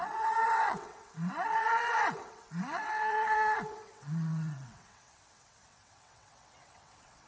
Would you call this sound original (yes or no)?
no